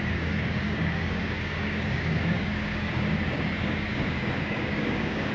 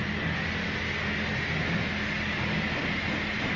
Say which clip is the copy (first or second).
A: first